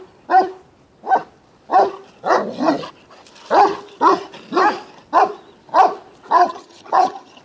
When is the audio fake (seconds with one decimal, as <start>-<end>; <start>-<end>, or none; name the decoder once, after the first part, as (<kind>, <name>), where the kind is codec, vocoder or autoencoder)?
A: 6.4-7.4 (vocoder, HiFi-GAN)